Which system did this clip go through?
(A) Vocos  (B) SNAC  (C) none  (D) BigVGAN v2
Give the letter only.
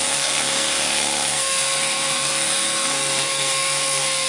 B